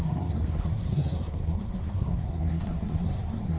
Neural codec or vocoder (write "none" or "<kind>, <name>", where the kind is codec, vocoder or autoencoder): codec, SNAC